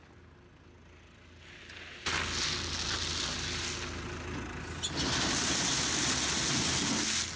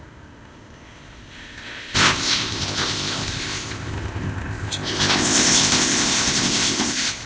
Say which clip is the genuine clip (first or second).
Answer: first